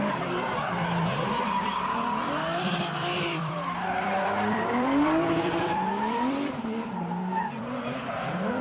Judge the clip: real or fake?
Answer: fake